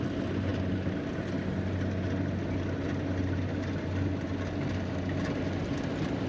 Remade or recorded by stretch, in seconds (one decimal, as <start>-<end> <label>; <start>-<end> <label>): 0.0-6.3 recorded

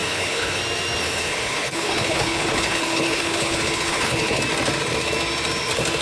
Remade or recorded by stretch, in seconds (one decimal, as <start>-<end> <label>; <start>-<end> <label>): 0.0-0.6 remade; 0.6-1.0 recorded; 1.0-4.4 remade; 4.4-6.0 recorded

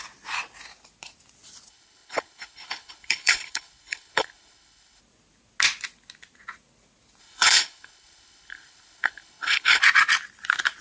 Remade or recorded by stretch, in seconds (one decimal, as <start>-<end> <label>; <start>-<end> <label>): 0.0-1.7 recorded; 1.7-5.0 remade; 5.0-7.2 recorded; 7.2-9.8 remade; 9.8-10.8 recorded